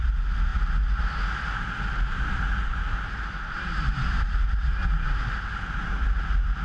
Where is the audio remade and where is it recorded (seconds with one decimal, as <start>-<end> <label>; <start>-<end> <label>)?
0.0-6.6 recorded